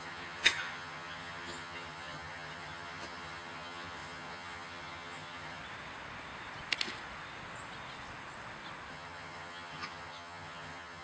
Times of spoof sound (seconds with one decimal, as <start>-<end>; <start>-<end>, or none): 0.0-5.6; 8.9-11.0